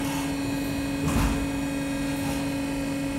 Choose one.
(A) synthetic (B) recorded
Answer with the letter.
B